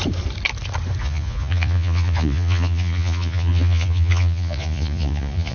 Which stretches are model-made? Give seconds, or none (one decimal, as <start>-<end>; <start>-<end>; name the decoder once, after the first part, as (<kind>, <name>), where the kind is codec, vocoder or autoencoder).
1.0-5.5 (vocoder, Vocos)